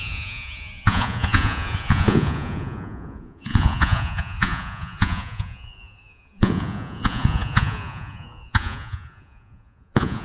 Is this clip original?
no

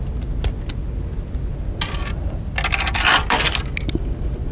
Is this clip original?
yes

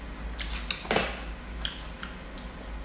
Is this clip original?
yes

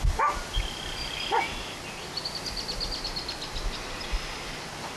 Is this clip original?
yes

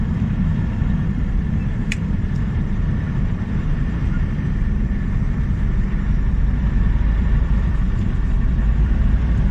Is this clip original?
no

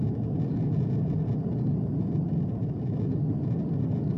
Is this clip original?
yes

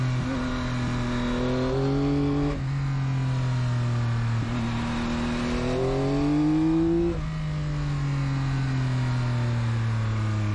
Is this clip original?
yes